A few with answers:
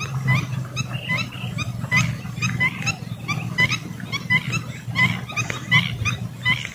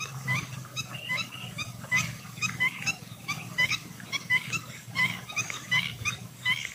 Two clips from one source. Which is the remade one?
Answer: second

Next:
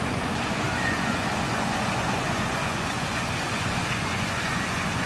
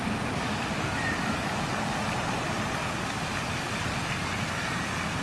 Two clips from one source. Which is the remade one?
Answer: first